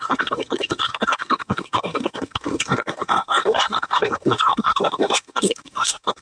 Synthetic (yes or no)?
yes